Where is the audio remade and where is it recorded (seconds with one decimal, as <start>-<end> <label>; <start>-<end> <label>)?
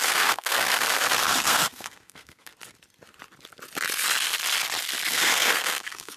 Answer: 0.0-2.5 remade; 2.5-5.1 recorded; 5.1-6.2 remade